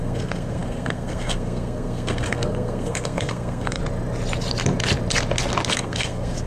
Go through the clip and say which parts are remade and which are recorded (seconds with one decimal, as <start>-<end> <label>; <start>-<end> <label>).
0.0-3.8 remade; 3.8-5.7 recorded; 5.7-6.5 remade